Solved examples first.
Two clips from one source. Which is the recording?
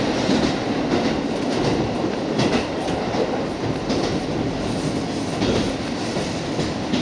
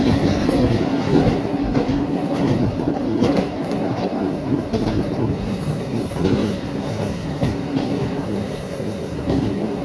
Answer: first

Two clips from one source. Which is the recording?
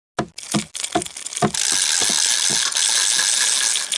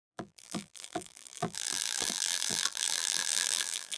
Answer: first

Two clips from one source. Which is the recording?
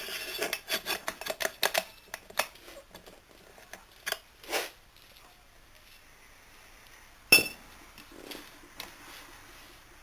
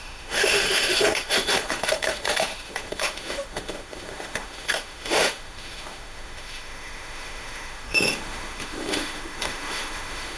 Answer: first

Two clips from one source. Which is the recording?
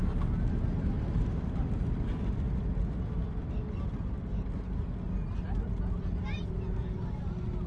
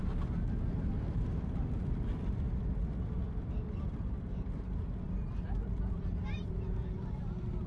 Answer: first